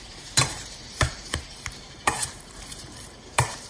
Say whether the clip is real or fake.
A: fake